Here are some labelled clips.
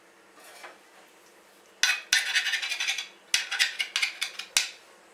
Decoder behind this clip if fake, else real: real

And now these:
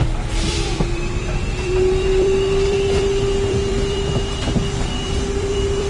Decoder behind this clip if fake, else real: fake, vocoder, BigVGAN v2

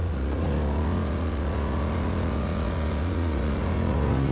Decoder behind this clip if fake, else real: fake, vocoder, Vocos